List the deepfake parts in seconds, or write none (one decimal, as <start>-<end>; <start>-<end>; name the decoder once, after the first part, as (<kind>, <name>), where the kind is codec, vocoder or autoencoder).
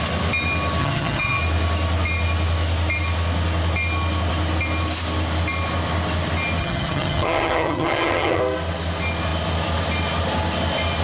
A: 0.8-1.4 (vocoder, HiFi-GAN); 6.6-8.4